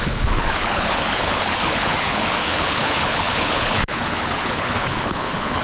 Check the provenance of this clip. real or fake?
fake